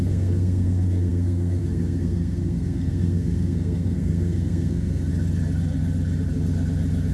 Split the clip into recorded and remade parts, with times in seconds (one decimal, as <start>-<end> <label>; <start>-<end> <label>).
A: 0.0-5.1 remade; 5.1-7.1 recorded